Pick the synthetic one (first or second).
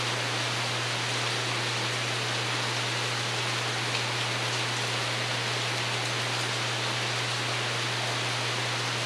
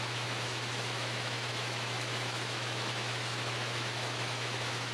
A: second